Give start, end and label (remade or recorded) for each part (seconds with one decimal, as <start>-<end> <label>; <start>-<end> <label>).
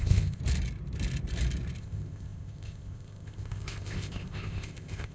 0.0-0.4 remade; 0.4-1.8 recorded; 1.8-5.1 remade